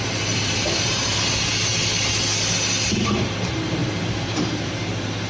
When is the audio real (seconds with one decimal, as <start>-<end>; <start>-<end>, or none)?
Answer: 1.7-3.0